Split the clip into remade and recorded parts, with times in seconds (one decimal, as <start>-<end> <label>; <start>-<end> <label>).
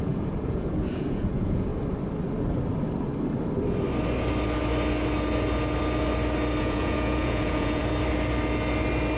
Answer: 0.0-1.7 remade; 1.7-6.6 recorded; 6.6-7.8 remade; 7.8-9.2 recorded